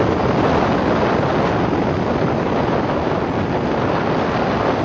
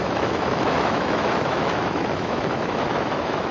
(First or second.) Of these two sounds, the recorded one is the first